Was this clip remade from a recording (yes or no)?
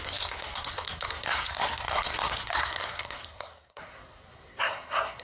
yes